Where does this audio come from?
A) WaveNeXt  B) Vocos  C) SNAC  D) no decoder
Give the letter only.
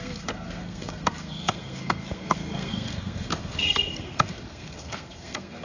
C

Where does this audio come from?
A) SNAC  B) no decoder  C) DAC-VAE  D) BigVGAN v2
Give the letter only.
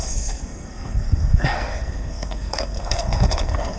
A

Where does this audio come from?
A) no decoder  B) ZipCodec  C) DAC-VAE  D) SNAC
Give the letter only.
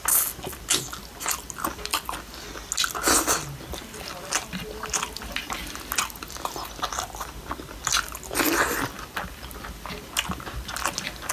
A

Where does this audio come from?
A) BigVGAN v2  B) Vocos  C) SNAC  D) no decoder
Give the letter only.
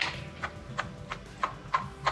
D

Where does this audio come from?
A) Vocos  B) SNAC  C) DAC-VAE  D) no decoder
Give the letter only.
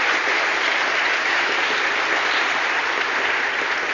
D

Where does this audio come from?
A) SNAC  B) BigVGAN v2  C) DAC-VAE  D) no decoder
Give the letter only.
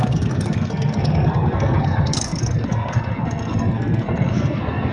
A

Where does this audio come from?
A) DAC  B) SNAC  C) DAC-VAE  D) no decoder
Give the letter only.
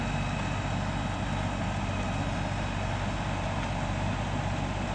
D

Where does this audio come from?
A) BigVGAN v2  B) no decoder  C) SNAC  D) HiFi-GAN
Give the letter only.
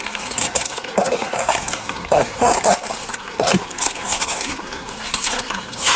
C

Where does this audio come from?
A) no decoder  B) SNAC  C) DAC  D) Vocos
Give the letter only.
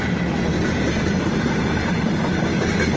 A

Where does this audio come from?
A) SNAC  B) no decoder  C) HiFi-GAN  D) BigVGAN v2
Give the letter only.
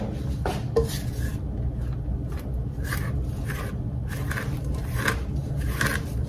B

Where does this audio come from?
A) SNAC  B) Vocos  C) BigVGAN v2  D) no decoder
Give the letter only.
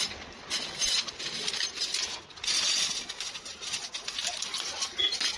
D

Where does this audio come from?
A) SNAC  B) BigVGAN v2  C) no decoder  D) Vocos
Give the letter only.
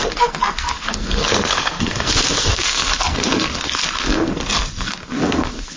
A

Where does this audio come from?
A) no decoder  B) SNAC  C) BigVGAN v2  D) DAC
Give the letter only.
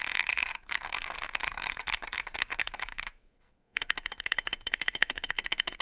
B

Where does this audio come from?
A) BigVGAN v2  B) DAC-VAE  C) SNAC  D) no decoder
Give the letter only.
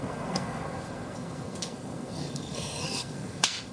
C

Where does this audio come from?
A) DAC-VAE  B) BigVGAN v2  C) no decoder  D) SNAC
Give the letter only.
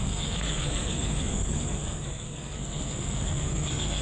D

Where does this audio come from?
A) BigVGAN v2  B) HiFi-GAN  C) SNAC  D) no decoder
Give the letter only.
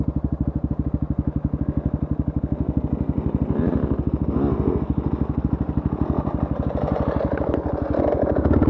D